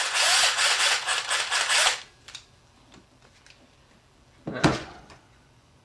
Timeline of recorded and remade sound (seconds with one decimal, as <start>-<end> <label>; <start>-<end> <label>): 0.0-1.1 remade; 1.1-4.6 recorded; 4.6-5.8 remade